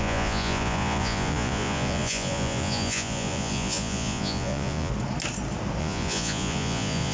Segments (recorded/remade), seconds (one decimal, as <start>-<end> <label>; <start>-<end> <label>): 0.0-4.9 remade; 4.9-5.8 recorded; 5.8-7.1 remade